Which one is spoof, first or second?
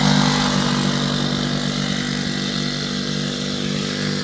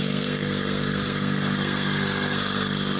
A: second